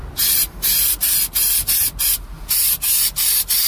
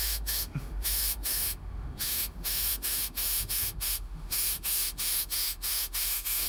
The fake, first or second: second